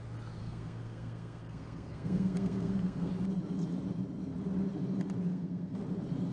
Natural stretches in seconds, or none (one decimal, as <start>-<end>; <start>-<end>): 0.0-0.4; 3.1-5.3; 5.8-6.3